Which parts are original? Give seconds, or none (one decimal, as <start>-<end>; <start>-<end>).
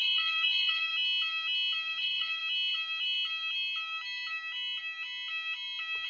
0.9-2.0; 2.4-6.1